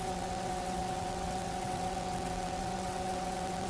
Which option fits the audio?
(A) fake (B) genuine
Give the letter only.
A